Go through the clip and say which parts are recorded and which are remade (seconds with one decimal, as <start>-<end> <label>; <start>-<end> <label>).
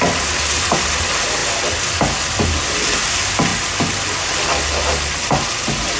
0.0-6.0 recorded